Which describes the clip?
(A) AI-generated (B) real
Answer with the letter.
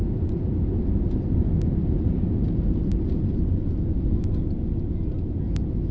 B